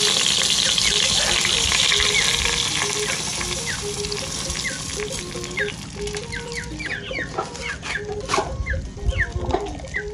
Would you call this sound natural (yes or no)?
yes